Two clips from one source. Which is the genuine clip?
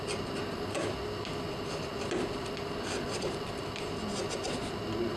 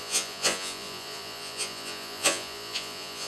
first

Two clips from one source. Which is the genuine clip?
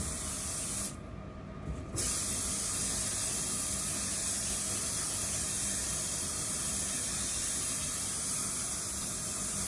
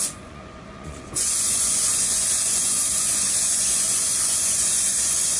first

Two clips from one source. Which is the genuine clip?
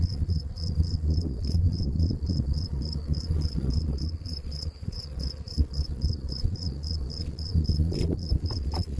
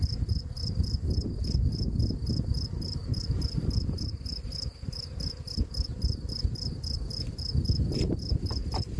second